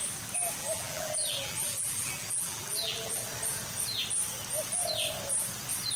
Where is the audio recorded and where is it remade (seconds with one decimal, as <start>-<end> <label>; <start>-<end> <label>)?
0.0-0.6 recorded; 0.6-3.3 remade; 3.3-6.0 recorded